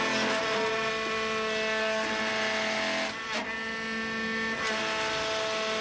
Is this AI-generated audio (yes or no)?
no